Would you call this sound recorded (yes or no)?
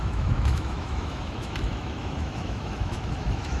no